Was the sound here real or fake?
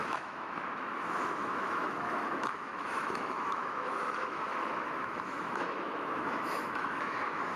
fake